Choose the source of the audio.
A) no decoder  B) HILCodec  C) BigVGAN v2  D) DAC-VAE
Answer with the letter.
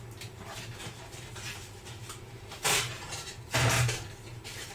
C